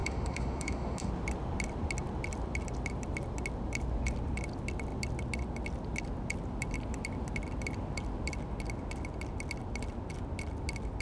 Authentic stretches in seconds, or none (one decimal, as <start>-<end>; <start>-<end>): 1.1-11.0